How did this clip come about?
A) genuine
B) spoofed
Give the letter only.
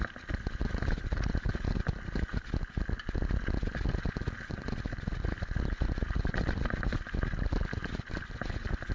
A